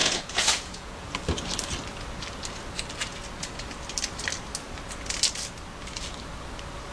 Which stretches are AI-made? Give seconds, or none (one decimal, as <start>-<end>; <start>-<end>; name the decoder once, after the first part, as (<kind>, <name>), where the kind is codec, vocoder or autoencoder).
0.0-1.1 (vocoder, Vocos)